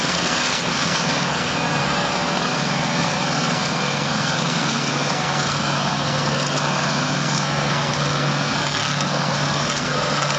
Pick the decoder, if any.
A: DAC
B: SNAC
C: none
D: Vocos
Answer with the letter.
B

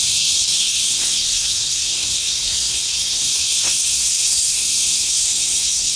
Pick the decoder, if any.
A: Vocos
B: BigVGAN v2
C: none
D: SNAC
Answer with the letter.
D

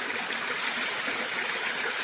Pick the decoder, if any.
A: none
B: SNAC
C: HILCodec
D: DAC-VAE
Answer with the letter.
A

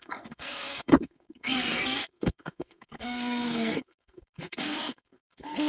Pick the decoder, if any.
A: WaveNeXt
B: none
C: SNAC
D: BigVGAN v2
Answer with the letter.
C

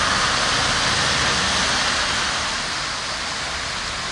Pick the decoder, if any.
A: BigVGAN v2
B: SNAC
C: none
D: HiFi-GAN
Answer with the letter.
C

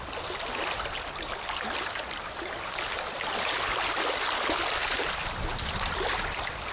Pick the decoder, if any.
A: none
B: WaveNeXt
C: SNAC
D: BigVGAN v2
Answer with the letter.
A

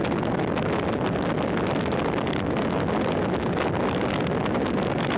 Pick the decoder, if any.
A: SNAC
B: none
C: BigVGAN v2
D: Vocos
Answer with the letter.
B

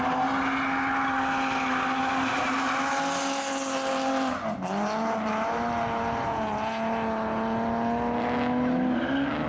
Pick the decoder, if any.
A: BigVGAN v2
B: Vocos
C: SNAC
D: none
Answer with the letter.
D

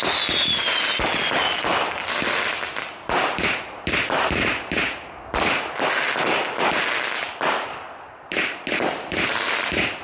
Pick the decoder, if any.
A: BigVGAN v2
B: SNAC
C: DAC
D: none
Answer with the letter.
D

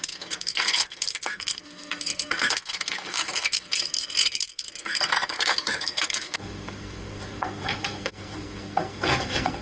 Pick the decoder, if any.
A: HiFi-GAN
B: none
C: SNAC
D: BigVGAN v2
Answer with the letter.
C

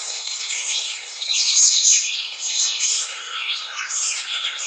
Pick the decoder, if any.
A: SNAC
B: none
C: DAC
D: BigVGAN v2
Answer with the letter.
A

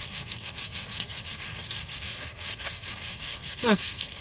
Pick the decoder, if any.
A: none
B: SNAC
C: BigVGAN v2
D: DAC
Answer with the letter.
B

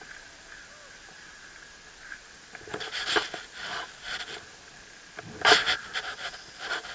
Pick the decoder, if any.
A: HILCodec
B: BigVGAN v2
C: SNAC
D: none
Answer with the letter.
D